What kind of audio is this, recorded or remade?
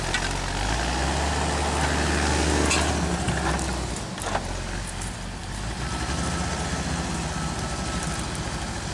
recorded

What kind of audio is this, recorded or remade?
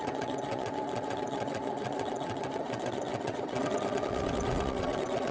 remade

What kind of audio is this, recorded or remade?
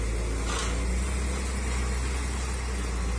recorded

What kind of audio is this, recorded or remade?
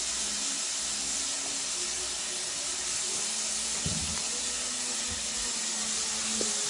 recorded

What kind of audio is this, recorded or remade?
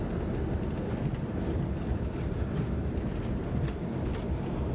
recorded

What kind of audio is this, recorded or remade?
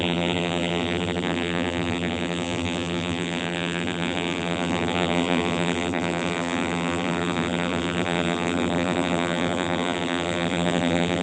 remade